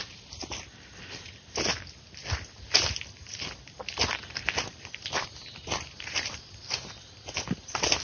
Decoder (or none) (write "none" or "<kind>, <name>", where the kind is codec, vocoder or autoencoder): vocoder, BigVGAN v2